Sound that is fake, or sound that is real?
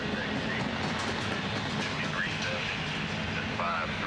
real